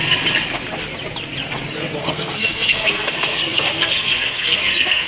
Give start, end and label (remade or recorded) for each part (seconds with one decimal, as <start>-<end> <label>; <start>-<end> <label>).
0.0-2.0 recorded; 2.0-5.1 remade